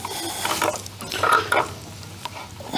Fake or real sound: real